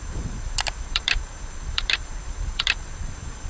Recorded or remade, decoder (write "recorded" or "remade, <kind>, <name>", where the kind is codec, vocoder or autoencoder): remade, vocoder, BigVGAN v2